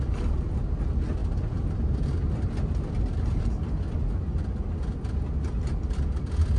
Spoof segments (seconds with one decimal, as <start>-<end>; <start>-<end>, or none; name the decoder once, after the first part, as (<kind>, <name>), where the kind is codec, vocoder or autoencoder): none

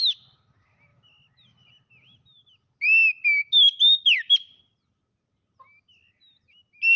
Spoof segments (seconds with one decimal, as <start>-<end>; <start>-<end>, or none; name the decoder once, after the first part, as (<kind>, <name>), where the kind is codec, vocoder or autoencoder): none